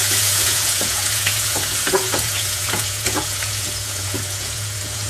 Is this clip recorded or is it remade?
remade